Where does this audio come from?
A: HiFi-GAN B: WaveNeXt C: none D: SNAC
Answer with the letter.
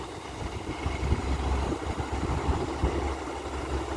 C